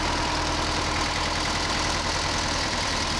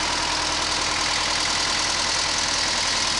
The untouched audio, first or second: second